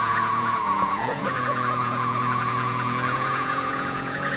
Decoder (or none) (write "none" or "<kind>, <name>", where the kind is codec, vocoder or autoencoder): vocoder, Vocos